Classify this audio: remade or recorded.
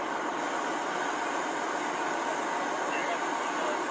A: recorded